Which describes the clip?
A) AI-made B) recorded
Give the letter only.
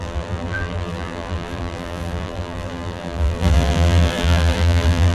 A